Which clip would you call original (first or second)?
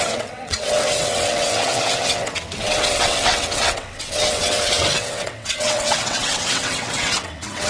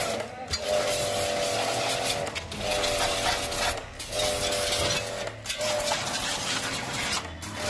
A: second